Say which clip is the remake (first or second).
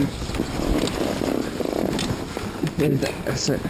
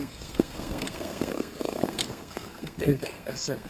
second